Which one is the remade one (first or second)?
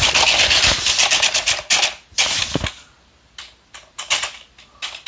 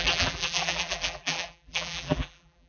second